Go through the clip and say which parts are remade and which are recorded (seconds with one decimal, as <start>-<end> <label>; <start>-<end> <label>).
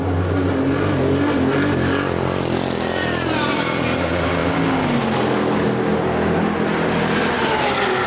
0.0-8.1 recorded